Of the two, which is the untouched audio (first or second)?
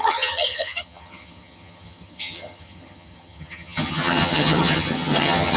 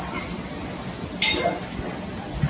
second